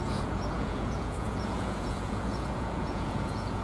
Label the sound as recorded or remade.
remade